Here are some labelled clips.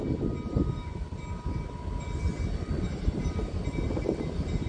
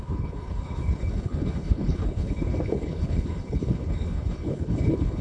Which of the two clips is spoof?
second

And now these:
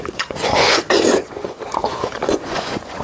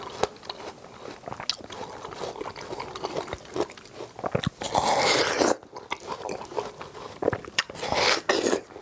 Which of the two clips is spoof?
first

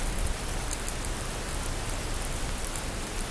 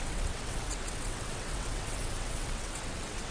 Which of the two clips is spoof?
second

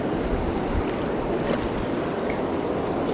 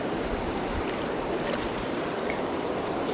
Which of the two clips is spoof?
second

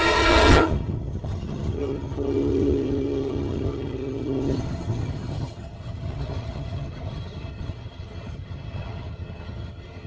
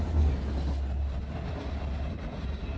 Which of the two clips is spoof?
first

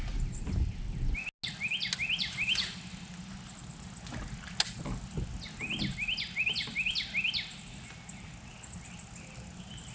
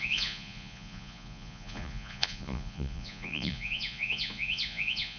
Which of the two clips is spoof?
second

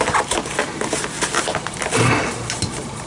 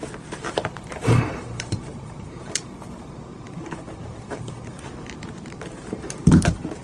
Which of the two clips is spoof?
second